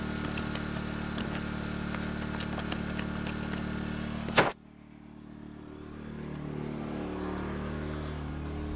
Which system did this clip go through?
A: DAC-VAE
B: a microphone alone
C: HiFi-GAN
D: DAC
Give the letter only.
B